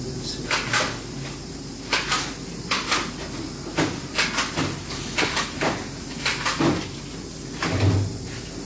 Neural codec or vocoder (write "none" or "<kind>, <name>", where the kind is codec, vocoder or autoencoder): none